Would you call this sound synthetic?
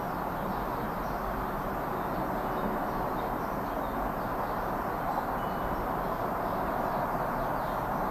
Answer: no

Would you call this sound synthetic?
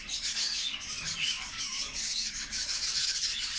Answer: yes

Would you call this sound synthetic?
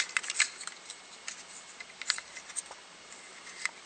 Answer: no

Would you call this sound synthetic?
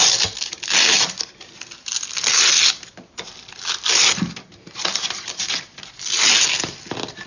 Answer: no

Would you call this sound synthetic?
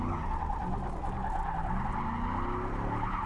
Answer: no